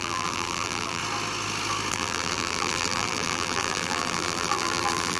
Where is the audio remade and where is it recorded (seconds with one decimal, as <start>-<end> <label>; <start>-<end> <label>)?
0.0-1.0 remade; 1.0-1.9 recorded; 1.9-5.2 remade